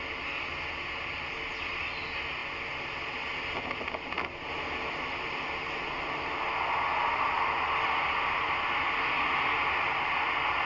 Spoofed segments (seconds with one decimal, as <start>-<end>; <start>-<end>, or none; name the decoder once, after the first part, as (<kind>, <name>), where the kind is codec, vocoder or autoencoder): none